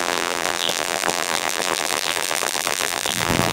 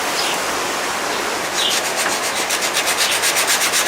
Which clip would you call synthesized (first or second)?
first